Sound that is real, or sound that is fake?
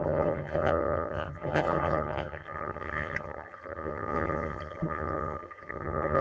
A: fake